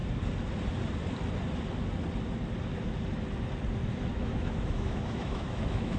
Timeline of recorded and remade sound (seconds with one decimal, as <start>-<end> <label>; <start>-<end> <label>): 0.0-4.1 recorded; 4.1-6.0 remade